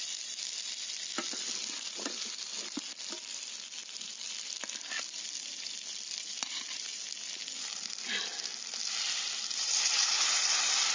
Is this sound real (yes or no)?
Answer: yes